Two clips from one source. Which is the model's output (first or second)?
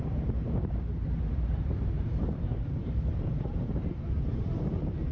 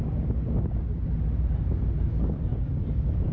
first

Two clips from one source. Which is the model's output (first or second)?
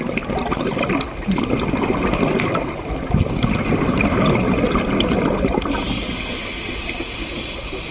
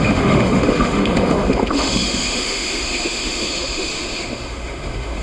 second